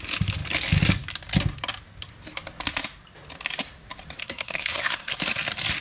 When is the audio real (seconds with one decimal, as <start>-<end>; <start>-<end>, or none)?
0.0-4.2; 5.1-5.8